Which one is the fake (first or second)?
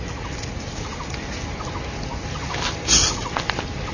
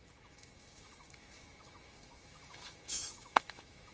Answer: second